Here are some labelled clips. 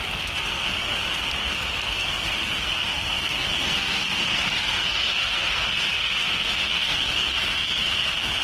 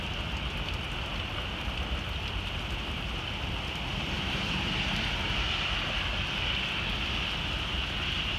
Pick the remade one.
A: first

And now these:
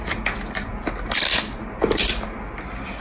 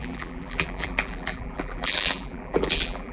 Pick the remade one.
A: second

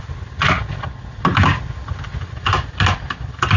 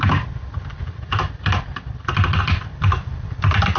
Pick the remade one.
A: second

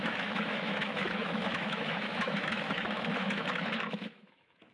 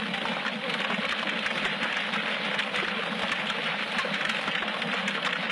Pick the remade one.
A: first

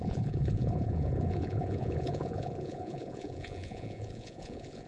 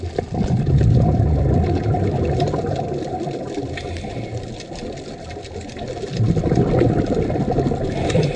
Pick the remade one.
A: first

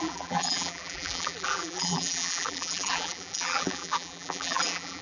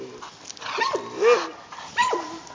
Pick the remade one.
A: first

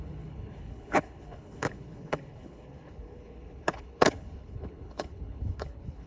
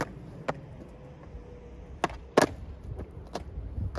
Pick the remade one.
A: first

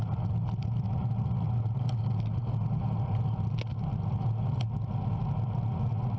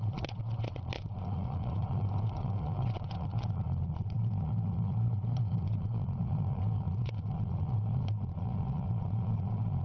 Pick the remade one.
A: second